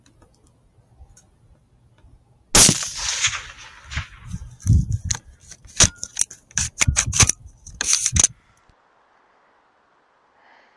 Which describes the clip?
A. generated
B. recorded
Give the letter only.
B